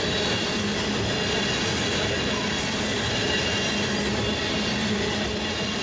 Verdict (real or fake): real